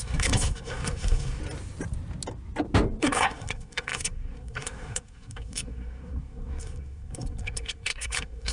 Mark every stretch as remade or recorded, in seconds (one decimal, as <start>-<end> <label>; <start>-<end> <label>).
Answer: 0.0-1.4 remade; 1.4-3.0 recorded; 3.0-8.5 remade